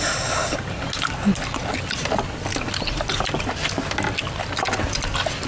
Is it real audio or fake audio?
real